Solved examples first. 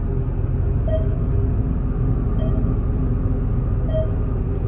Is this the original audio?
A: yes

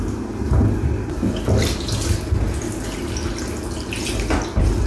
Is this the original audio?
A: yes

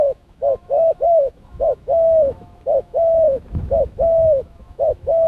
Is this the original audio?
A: no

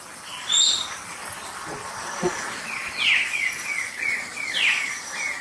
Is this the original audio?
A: yes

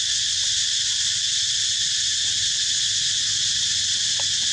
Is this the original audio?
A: yes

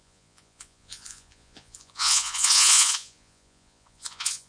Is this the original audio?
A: no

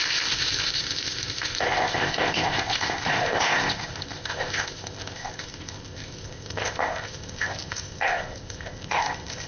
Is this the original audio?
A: no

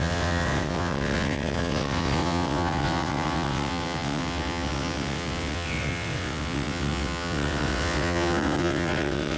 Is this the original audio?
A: no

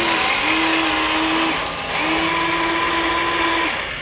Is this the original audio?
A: yes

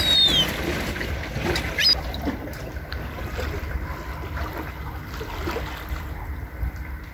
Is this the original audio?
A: yes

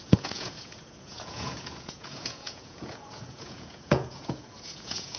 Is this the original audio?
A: no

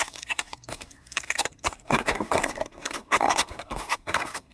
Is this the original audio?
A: no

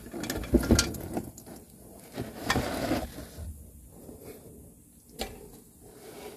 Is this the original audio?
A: yes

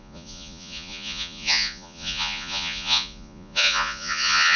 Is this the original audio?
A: no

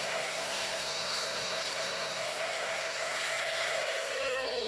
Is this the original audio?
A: no